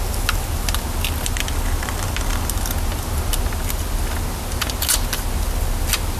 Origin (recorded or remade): recorded